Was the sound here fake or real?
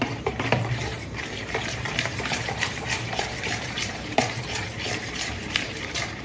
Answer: fake